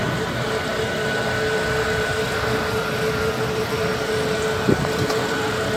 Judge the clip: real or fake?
real